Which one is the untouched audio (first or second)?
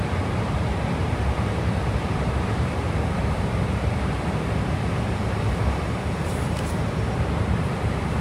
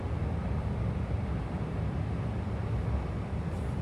second